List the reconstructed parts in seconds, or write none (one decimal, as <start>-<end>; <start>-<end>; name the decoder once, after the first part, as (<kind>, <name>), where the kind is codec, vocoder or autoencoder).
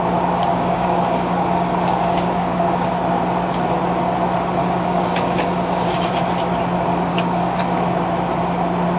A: 0.5-2.9 (codec, DAC); 4.6-6.1; 7.1-7.6